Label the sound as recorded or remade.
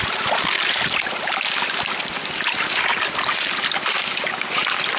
recorded